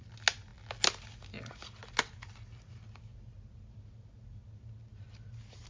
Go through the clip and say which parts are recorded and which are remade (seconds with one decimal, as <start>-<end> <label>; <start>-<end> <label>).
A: 0.0-5.7 recorded